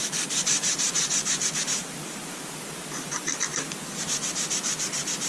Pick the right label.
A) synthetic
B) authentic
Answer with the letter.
B